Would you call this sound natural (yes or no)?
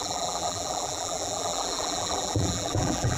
no